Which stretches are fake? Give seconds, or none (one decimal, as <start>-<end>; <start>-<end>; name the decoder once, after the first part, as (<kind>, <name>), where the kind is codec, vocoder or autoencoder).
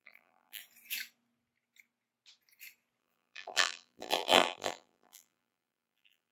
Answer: 0.0-0.6 (vocoder, BigVGAN v2); 3.0-6.3